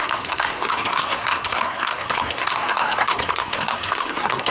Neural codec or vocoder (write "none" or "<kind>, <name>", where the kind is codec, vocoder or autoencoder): codec, SNAC